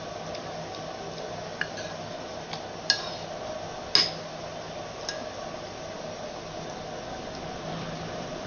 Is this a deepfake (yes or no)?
no